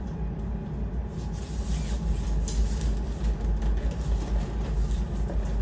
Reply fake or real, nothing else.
real